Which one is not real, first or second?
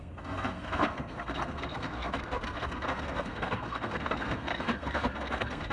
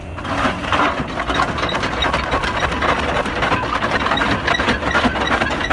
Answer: first